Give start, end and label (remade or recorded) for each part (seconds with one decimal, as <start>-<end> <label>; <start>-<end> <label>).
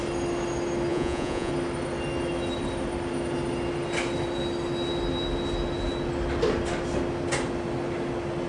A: 0.0-0.9 recorded; 0.9-1.5 remade; 1.5-8.5 recorded